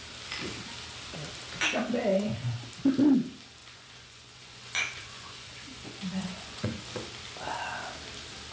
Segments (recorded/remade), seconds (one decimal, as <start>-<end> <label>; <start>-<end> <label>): 0.0-2.1 recorded; 2.1-2.6 remade; 2.6-3.6 recorded; 3.6-6.8 remade; 6.8-8.5 recorded